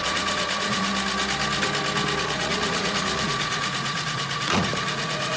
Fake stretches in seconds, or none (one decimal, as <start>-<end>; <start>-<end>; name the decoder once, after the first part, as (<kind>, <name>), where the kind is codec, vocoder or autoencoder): 0.0-0.9 (vocoder, Vocos); 2.2-5.4